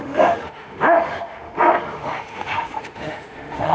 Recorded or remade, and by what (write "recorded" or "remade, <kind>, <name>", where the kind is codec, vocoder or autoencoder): remade, autoencoder, DAC-VAE